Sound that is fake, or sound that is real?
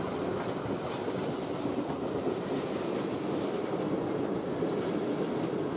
real